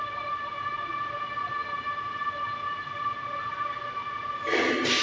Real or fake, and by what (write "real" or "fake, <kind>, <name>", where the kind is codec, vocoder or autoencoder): real